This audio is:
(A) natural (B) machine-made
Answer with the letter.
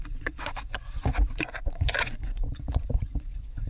B